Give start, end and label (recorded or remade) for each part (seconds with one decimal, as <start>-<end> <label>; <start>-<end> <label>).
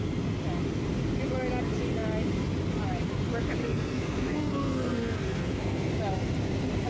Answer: 0.0-3.6 recorded; 3.6-5.9 remade; 5.9-6.9 recorded